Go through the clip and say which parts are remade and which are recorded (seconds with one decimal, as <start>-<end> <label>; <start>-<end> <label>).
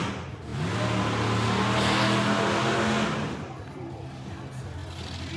0.0-5.4 recorded